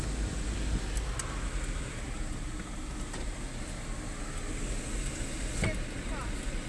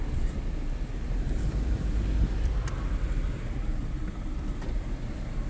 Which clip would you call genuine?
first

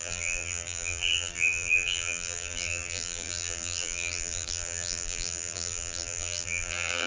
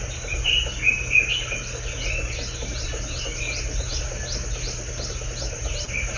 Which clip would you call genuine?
second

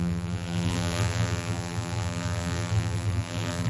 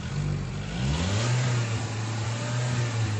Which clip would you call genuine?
second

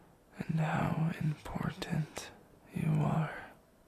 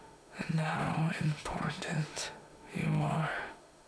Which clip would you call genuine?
first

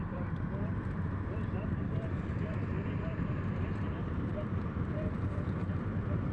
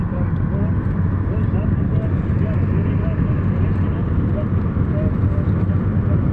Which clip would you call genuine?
second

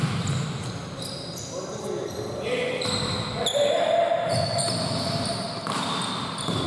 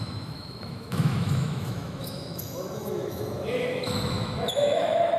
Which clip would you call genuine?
first